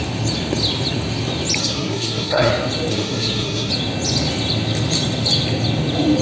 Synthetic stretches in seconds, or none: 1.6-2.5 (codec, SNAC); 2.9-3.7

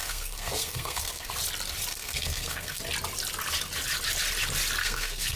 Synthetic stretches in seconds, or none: 0.0-1.3 (codec, SNAC); 1.9-2.8; 4.8-5.4

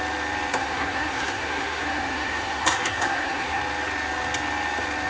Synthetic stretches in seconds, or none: 0.5-3.6 (codec, SNAC)

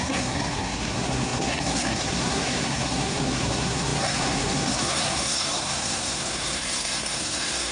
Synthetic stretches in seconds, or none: 0.0-7.7 (codec, SNAC)

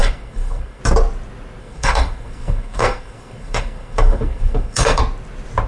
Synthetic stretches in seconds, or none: 0.0-0.8 (codec, SNAC); 1.6-5.0

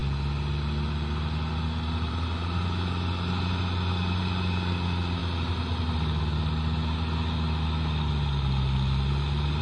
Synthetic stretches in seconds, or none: none